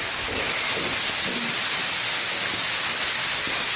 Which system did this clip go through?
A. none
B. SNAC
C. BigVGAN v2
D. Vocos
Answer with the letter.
A